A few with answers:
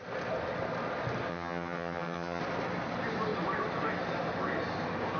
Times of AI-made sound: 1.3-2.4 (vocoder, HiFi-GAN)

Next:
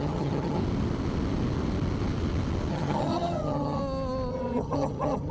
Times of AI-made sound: 0.0-0.6 (vocoder, HiFi-GAN); 2.7-3.8; 4.3-5.3

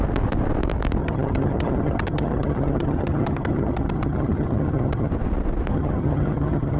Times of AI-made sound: 1.0-5.1 (vocoder, HiFi-GAN); 5.7-6.8

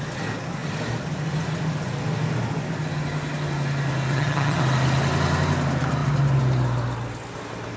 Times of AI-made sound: 4.1-4.6 (vocoder, HiFi-GAN)